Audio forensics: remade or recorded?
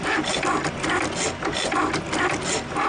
recorded